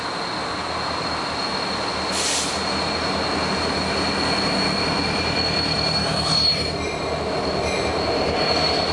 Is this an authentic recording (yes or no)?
yes